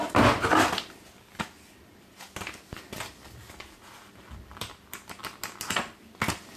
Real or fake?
real